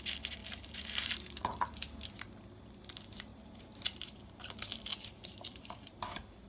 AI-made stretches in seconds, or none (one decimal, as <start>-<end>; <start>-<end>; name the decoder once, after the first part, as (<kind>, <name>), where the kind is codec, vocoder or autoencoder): 0.4-1.5 (vocoder, BigVGAN v2); 3.3-4.2; 4.9-6.0